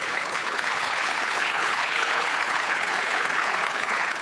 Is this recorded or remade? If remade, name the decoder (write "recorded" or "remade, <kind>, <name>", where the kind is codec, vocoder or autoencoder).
remade, codec, HILCodec